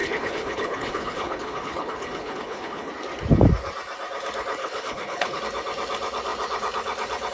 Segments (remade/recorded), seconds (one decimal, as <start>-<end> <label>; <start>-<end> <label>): 0.0-2.9 remade; 2.9-4.6 recorded; 4.6-5.4 remade; 5.4-7.3 recorded